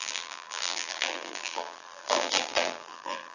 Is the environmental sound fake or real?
fake